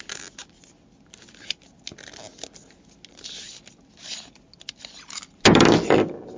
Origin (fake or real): real